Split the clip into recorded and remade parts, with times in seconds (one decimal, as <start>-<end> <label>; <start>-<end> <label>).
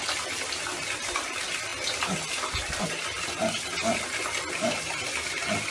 0.0-5.7 recorded